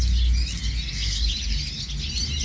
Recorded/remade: recorded